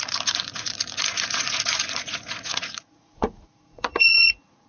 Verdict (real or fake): fake